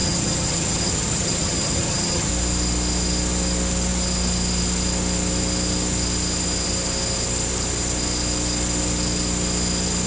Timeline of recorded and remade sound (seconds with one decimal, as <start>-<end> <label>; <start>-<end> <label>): 0.0-2.3 remade; 2.3-10.1 recorded